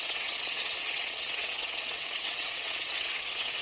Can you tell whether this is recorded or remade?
remade